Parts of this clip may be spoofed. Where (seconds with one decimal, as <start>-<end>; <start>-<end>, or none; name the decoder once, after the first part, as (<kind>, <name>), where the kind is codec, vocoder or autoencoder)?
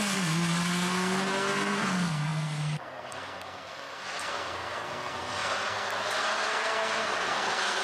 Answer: 0.0-7.8 (codec, SNAC)